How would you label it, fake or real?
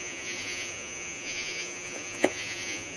fake